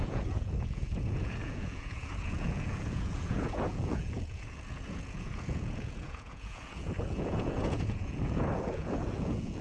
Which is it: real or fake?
fake